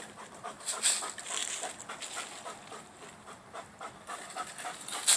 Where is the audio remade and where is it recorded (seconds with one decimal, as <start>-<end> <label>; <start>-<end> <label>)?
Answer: 0.0-1.4 remade; 1.4-1.9 recorded; 1.9-5.2 remade